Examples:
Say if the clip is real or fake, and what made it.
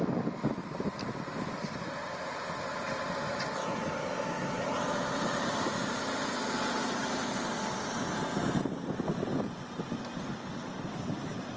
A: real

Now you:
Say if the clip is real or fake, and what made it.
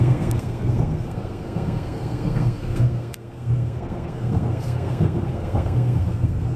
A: fake, codec, SNAC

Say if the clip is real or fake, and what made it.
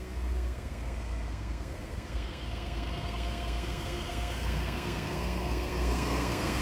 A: fake, codec, SNAC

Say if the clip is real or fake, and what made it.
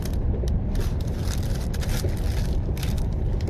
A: real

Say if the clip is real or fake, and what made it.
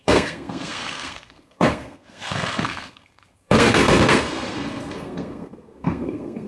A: fake, codec, SNAC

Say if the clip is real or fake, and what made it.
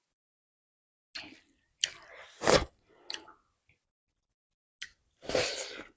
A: real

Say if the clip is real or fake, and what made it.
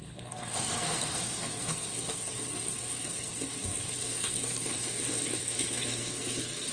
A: fake, codec, SNAC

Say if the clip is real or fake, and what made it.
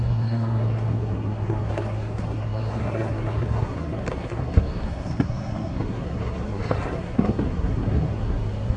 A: fake, codec, SNAC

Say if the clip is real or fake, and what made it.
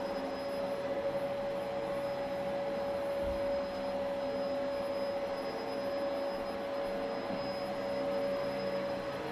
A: real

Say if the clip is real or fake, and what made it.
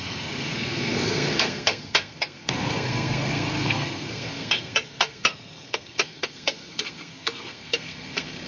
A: fake, codec, SNAC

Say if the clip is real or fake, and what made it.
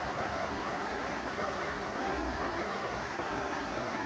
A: fake, codec, SNAC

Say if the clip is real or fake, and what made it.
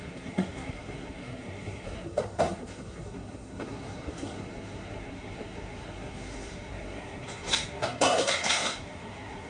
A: fake, codec, SNAC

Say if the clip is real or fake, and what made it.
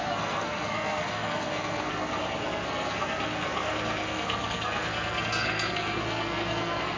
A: fake, codec, SNAC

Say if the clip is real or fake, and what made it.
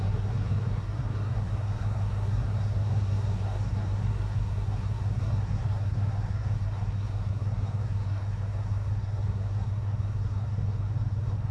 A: fake, codec, SNAC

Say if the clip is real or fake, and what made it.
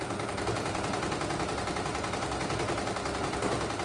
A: real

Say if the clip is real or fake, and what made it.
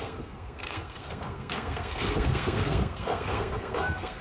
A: fake, codec, SNAC